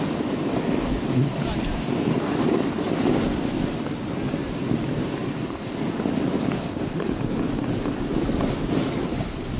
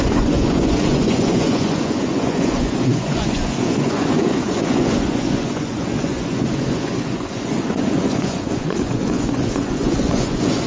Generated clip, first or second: second